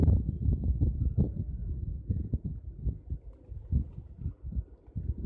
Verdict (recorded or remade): recorded